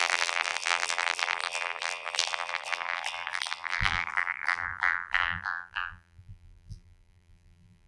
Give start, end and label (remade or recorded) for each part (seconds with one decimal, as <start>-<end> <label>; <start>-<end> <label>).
0.0-7.9 remade